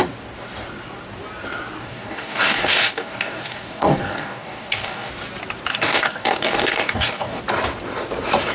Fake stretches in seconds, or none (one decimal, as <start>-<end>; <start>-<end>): 1.8-5.1; 5.7-7.4